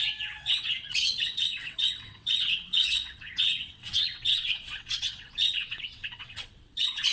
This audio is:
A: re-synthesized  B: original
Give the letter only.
A